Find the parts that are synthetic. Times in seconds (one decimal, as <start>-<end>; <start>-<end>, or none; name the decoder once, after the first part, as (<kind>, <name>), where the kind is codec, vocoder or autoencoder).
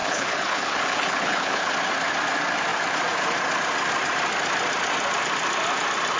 0.0-1.7 (codec, HILCodec)